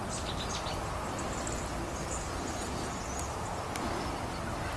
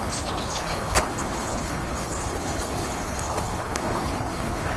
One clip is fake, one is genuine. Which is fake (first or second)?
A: second